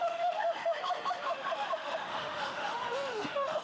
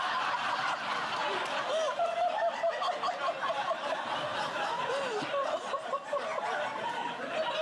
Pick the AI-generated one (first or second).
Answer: first